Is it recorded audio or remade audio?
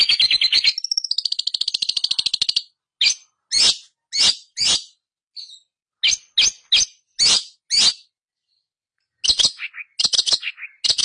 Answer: recorded